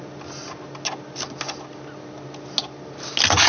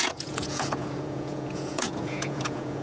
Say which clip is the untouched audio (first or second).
first